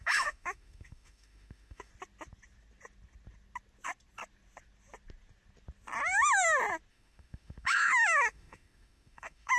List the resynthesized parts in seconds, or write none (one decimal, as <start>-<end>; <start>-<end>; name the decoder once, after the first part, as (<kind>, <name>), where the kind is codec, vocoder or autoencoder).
0.0-1.9 (autoencoder, DAC-VAE); 6.9-9.6